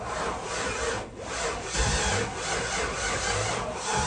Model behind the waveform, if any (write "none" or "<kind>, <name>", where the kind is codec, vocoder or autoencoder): none